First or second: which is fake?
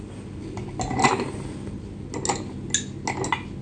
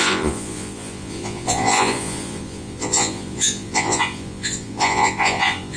second